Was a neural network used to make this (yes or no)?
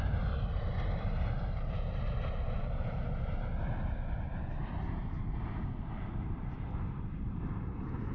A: yes